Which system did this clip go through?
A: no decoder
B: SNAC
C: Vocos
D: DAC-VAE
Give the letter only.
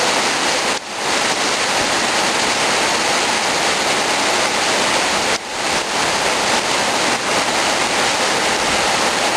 A